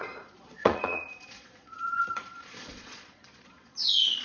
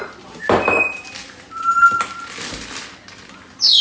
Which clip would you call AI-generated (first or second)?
first